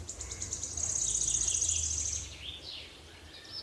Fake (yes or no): no